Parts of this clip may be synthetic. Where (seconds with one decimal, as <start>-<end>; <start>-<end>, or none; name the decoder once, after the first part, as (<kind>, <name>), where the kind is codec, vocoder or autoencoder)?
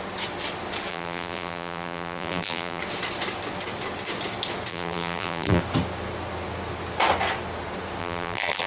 0.9-2.8 (vocoder, BigVGAN v2); 4.7-5.6; 8.0-8.7